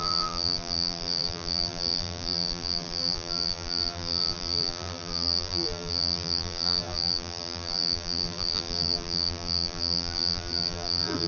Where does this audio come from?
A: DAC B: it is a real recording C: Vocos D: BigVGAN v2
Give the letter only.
D